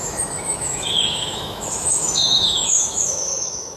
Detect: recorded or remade remade